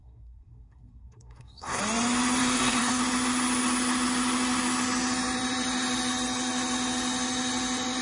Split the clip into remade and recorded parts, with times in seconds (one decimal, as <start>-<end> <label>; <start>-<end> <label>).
0.0-1.8 remade; 1.8-2.4 recorded; 2.4-3.0 remade; 3.0-8.0 recorded